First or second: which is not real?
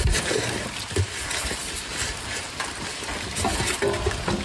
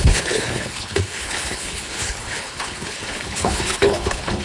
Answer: second